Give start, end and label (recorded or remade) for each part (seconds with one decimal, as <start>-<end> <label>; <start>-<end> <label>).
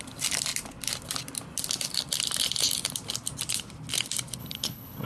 0.0-4.4 recorded; 4.4-5.1 remade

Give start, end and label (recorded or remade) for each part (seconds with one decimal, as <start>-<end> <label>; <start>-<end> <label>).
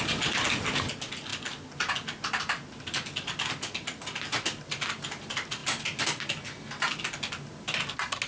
0.0-8.3 recorded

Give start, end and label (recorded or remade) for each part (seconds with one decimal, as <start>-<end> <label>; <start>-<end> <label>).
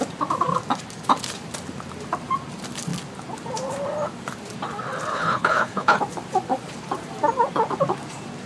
0.0-5.1 recorded; 5.1-6.0 remade; 6.0-8.5 recorded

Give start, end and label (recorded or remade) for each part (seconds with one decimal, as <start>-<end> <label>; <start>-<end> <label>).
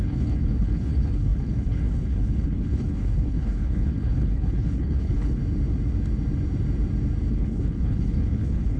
0.0-5.4 remade; 5.4-7.3 recorded; 7.3-8.8 remade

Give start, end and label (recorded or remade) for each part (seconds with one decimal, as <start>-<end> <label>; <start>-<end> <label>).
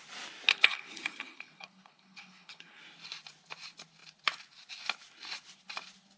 0.0-0.5 recorded; 0.5-2.8 remade; 2.8-6.2 recorded